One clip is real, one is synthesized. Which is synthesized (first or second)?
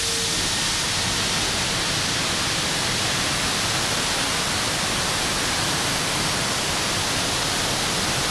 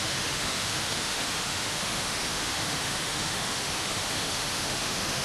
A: second